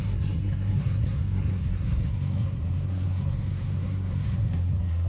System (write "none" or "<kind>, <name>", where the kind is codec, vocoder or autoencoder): codec, SNAC